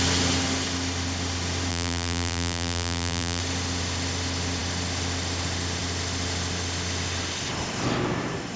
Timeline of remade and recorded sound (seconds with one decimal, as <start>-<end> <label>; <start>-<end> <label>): 0.0-1.7 recorded; 1.7-3.4 remade; 3.4-8.6 recorded